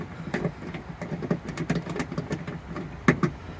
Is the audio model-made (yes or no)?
no